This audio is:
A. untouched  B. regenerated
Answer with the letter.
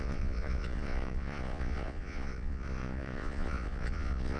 B